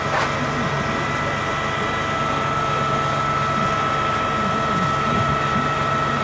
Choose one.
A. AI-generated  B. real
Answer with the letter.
B